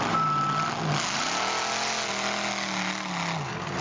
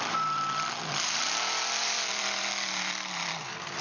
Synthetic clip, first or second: second